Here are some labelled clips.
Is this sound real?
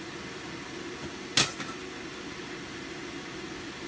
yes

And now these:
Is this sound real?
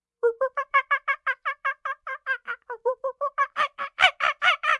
no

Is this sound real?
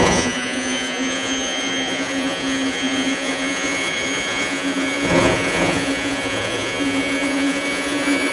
no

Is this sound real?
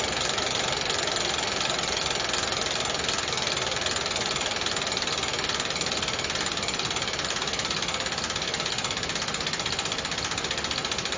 yes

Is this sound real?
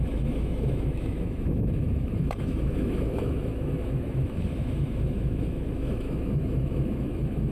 no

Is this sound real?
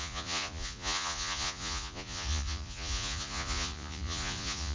no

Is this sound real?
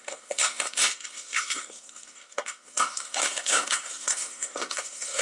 no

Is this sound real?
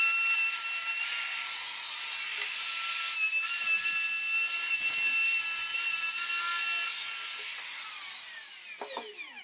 yes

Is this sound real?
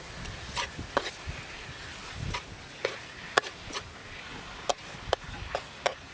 yes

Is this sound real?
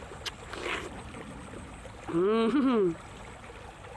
yes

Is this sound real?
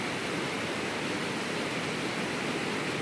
yes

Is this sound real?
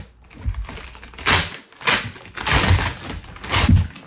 yes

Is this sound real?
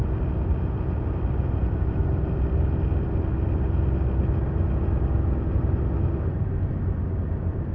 yes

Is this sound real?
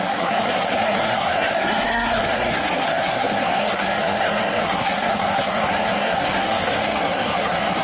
no